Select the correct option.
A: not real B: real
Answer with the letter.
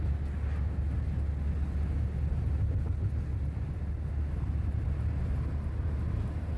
B